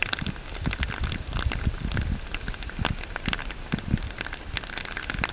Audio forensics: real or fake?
real